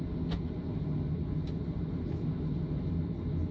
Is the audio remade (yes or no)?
no